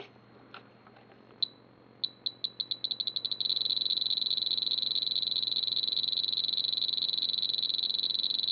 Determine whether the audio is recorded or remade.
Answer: recorded